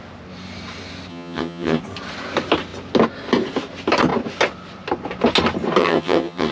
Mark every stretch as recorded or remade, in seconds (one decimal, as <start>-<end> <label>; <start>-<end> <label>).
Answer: 0.0-1.1 recorded; 1.1-1.8 remade; 1.8-5.8 recorded; 5.8-6.5 remade